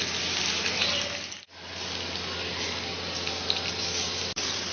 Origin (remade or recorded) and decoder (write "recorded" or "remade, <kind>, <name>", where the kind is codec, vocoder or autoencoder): recorded